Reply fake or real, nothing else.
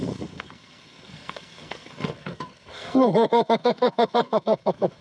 fake